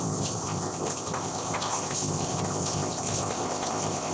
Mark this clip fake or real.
fake